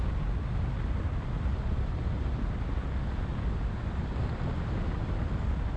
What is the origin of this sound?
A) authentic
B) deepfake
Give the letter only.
A